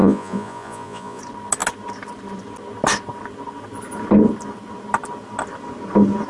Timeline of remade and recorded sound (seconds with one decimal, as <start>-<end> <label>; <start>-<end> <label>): 0.0-1.2 remade; 1.2-6.3 recorded